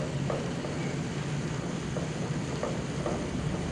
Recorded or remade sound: recorded